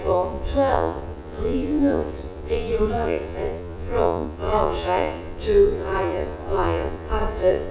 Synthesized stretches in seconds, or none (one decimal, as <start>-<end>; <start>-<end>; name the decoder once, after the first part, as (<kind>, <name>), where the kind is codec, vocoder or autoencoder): 0.0-7.7 (vocoder, Vocos)